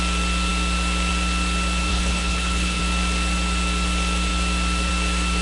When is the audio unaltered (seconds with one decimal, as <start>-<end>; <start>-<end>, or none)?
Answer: 0.0-1.9; 2.8-5.4